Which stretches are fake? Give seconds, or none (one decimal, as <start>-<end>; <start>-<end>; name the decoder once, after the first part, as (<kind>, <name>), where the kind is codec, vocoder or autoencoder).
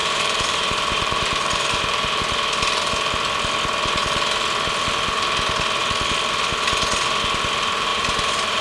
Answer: 0.0-2.2 (vocoder, BigVGAN v2); 7.9-8.6